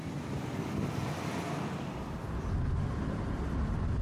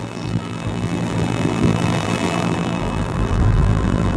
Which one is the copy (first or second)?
second